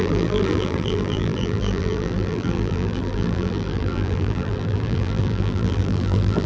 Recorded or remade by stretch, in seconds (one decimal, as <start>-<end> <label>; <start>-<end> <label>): 0.0-6.5 remade